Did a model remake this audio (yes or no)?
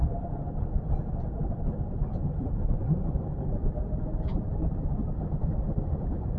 no